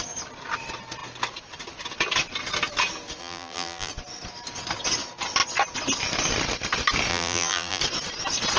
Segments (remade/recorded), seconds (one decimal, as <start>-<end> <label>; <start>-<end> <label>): 0.0-3.2 recorded; 3.2-3.9 remade; 3.9-7.1 recorded; 7.1-7.8 remade; 7.8-8.6 recorded